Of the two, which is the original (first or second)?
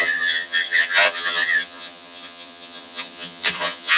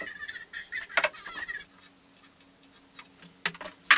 second